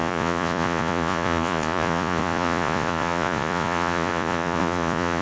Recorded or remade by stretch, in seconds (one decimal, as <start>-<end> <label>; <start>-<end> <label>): 0.0-5.2 remade